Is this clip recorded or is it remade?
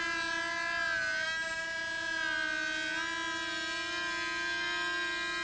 recorded